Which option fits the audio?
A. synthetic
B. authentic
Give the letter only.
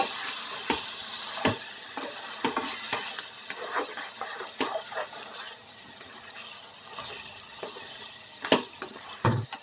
B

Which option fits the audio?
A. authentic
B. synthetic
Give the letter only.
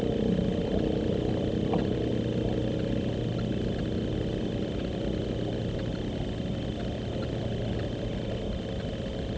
A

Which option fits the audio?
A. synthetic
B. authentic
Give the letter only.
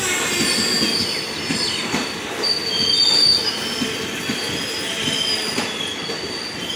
B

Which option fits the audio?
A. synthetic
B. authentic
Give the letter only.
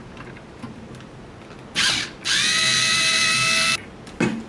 B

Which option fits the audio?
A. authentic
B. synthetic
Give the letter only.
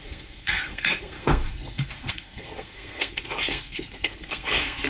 B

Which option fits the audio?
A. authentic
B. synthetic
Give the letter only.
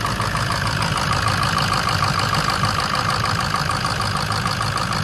A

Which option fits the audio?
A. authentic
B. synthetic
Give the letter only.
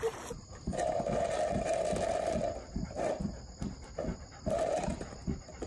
A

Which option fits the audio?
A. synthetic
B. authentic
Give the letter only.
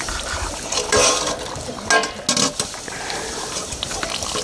B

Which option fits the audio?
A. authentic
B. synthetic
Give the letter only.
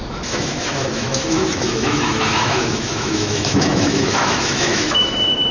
B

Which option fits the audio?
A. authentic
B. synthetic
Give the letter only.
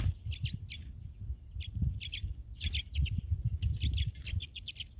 A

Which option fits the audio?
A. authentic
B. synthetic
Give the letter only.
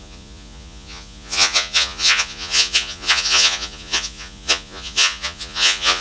B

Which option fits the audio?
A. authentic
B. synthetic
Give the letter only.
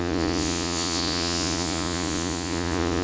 B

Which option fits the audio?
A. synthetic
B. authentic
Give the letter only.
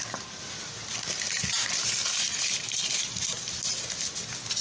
B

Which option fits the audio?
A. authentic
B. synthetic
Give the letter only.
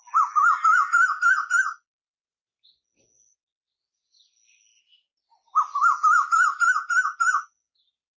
A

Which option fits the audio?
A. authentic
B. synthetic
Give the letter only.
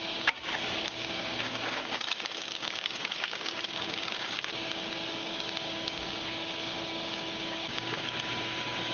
B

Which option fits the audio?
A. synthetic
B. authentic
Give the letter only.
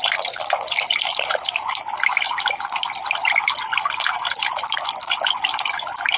B